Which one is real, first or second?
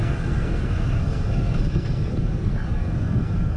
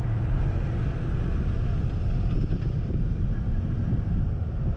second